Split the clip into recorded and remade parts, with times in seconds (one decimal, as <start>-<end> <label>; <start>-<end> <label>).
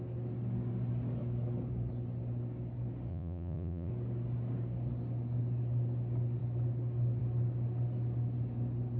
0.0-3.1 recorded; 3.1-3.9 remade; 3.9-9.0 recorded